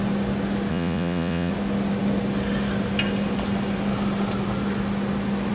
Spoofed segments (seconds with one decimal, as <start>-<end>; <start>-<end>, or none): 0.7-1.5